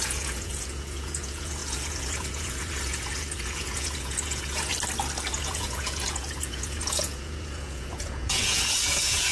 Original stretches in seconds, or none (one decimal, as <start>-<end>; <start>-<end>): 4.7-5.3